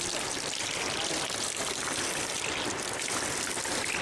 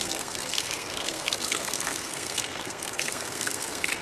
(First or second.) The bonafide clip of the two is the first